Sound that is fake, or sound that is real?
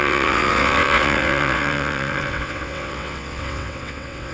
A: fake